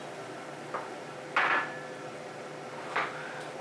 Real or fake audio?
real